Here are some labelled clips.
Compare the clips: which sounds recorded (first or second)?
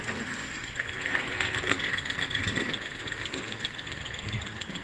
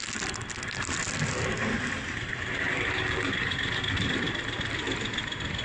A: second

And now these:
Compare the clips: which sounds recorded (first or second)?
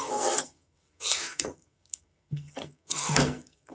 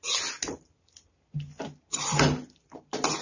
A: second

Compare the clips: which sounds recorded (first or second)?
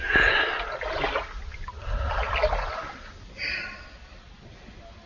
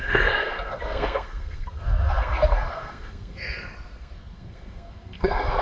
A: first